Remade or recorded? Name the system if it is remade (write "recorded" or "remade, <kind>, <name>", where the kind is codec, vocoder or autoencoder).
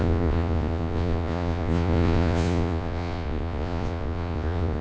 remade, vocoder, Vocos